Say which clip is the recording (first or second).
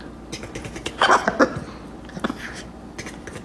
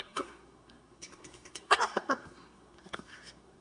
first